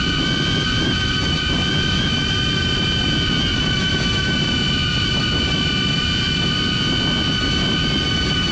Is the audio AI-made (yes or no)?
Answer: no